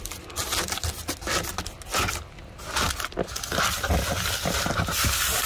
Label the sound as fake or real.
real